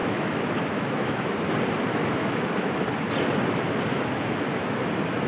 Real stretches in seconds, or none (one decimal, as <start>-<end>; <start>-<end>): 1.5-1.9; 2.7-3.9; 4.8-5.3